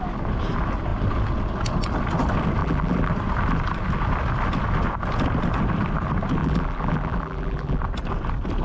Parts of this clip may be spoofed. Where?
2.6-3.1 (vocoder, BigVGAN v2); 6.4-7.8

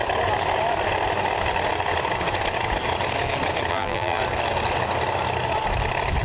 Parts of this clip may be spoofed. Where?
3.7-4.2 (vocoder, BigVGAN v2)